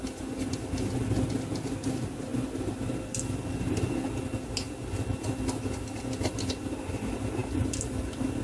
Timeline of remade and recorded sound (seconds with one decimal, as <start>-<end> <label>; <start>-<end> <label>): 0.0-8.4 recorded